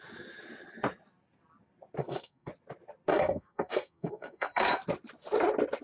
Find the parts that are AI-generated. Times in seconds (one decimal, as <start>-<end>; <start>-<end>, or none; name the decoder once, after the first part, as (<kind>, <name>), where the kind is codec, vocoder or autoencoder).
2.0-2.5 (codec, SNAC); 3.1-4.7